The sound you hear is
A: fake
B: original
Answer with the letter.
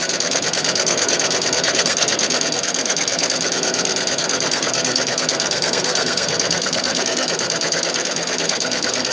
A